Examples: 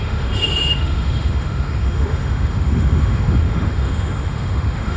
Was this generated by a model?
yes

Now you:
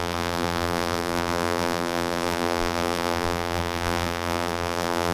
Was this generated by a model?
yes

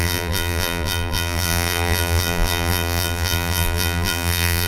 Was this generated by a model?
yes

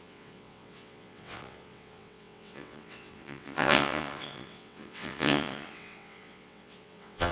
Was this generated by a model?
yes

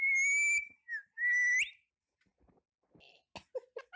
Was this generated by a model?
no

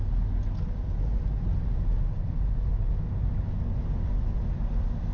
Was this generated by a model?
no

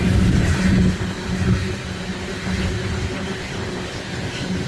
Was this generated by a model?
no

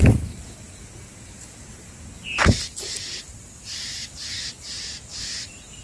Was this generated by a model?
no